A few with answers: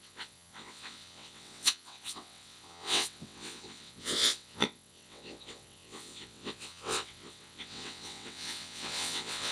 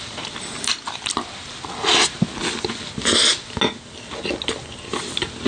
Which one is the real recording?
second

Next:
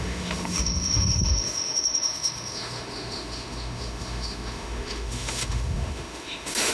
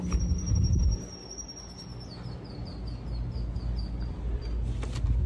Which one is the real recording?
second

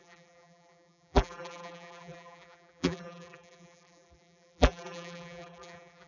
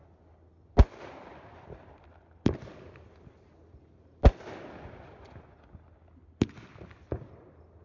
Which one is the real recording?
second